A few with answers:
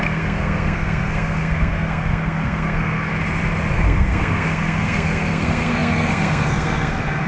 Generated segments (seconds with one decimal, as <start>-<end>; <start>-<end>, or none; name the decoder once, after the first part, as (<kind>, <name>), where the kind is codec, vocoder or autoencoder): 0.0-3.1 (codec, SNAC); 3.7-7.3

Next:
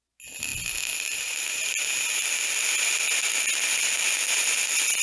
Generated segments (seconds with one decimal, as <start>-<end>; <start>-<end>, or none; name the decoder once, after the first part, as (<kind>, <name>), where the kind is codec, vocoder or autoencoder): none

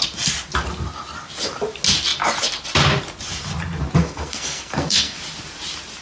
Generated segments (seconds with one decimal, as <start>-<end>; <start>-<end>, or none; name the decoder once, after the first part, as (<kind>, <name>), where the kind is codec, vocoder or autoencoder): 4.0-5.2 (codec, SNAC)

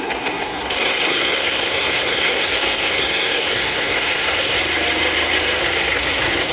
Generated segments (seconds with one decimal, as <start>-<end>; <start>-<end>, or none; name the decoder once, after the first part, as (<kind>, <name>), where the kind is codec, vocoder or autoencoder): 0.0-4.6 (codec, SNAC); 5.6-6.5

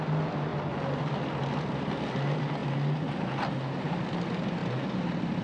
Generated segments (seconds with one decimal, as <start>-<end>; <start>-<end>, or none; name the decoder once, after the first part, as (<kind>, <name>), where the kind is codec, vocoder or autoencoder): none

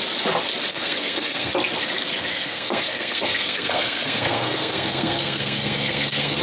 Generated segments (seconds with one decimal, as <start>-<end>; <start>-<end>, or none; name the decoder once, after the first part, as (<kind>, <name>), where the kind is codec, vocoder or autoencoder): 0.7-1.5 (codec, SNAC); 2.3-6.4